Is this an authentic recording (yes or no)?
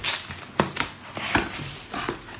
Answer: yes